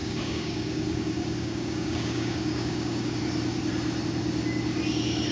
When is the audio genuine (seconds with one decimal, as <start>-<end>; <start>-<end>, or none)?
3.2-5.3